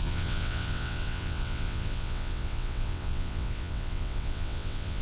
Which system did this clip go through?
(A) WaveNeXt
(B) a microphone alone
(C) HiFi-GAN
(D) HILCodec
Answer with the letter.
A